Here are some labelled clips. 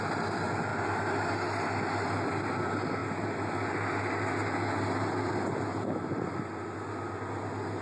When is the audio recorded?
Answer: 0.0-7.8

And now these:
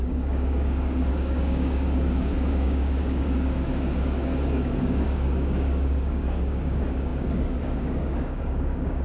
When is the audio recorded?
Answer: none